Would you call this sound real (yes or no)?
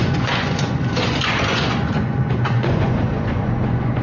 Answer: no